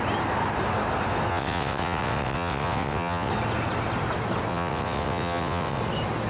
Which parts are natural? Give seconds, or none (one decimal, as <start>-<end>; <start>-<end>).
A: 0.0-1.3; 3.3-4.5; 5.8-6.3